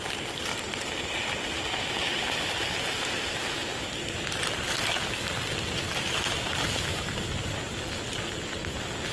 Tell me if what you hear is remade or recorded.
recorded